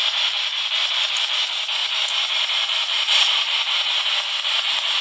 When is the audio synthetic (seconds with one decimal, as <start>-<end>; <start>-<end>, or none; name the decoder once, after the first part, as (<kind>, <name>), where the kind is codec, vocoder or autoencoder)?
0.0-0.7 (vocoder, BigVGAN v2); 1.8-5.0